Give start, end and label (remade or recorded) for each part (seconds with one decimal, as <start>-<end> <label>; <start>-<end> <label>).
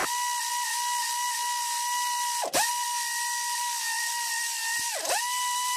0.0-5.8 recorded